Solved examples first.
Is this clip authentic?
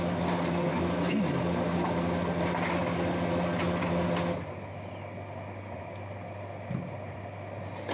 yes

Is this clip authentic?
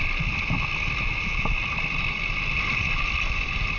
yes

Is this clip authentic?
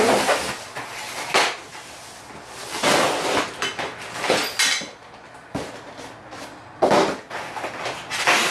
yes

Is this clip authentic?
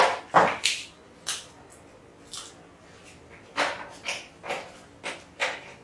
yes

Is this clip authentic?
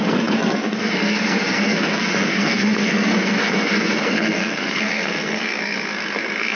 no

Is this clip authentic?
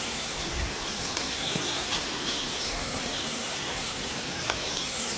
no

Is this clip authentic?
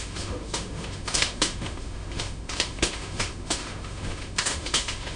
no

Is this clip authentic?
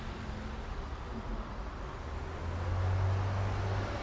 yes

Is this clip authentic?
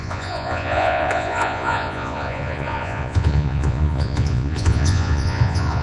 no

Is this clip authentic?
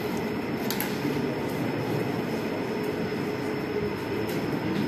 yes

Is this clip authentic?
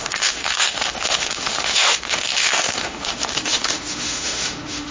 no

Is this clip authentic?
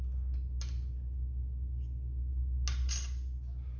yes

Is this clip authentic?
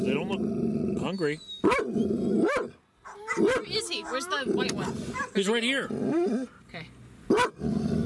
yes